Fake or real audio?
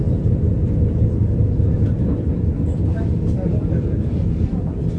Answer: fake